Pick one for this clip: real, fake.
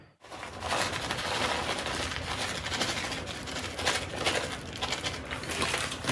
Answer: real